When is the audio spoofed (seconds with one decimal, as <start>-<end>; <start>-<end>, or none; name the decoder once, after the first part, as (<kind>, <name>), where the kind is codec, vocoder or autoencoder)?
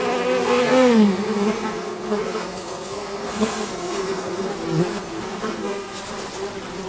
0.4-4.5 (codec, SNAC); 4.9-6.0